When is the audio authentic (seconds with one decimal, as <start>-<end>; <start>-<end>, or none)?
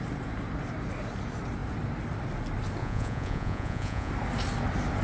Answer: 0.0-2.8; 4.1-5.0